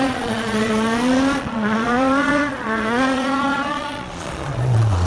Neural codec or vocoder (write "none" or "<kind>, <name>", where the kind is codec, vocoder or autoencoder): vocoder, Vocos